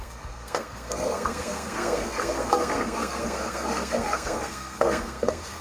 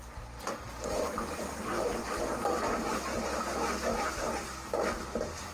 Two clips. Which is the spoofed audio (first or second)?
first